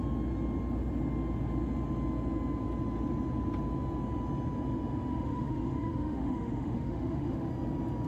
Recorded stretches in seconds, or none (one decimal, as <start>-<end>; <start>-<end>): 0.0-5.1; 7.5-8.1